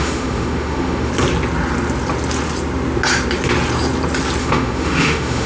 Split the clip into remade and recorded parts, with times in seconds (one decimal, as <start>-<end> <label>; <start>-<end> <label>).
0.0-1.1 remade; 1.1-4.4 recorded; 4.4-5.5 remade